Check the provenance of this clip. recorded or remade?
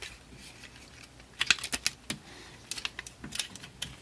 recorded